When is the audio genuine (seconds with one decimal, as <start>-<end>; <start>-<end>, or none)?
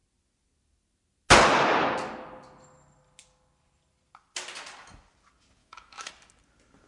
0.0-5.6; 6.1-6.9